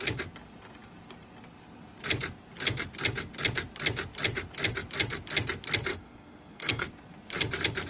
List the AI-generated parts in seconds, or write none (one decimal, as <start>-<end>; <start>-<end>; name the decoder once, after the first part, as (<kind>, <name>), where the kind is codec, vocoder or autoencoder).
5.9-6.9 (codec, SNAC)